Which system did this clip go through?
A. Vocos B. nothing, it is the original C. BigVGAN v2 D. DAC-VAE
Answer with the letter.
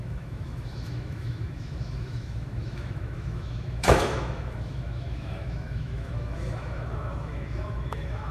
D